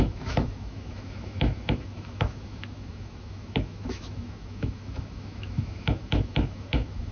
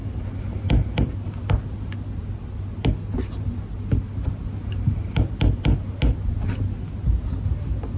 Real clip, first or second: second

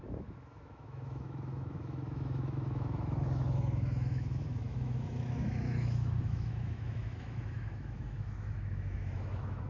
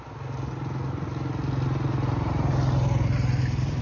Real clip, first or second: second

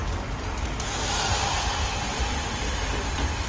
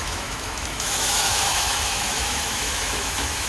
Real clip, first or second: first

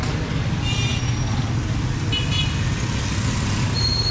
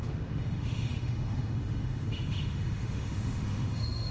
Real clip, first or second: first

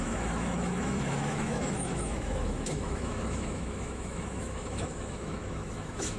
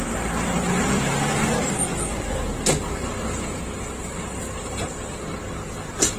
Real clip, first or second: second